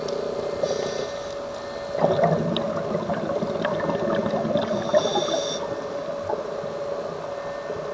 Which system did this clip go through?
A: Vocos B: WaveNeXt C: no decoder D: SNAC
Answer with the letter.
C